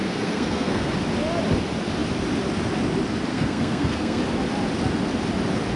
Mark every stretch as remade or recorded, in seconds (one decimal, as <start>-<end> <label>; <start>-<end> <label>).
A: 0.0-0.9 remade; 0.9-3.3 recorded; 3.3-4.2 remade; 4.2-5.8 recorded